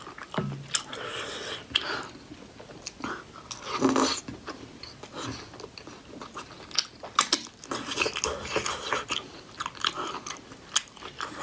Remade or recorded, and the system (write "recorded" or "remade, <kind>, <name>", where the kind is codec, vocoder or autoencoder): recorded